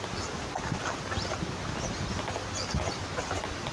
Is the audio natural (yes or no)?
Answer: yes